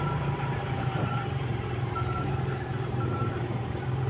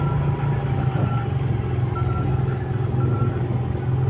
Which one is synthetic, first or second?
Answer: first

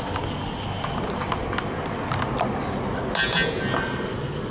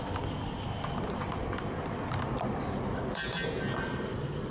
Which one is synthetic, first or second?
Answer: second